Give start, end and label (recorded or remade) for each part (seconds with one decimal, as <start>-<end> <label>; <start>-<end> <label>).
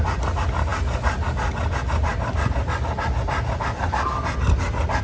0.0-5.0 recorded